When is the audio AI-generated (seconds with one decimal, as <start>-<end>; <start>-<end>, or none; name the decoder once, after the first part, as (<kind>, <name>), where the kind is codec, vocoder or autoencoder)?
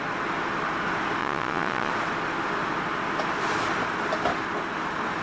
1.2-1.9 (vocoder, Vocos)